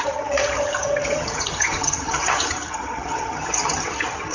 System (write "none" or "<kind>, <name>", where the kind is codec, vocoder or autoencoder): vocoder, HiFi-GAN